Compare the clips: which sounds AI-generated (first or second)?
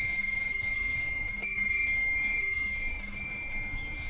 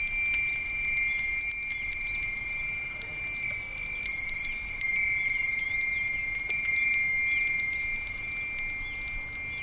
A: first